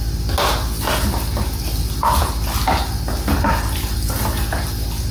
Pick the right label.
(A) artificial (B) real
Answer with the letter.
B